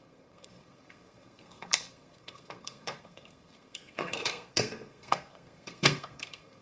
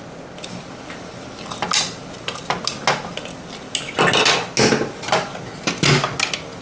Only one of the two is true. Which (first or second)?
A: second